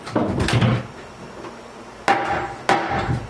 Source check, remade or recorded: recorded